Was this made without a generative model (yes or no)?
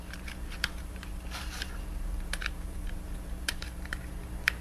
no